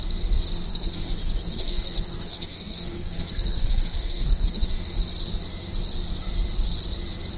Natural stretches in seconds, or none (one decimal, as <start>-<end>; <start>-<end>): 0.0-0.7; 4.7-7.4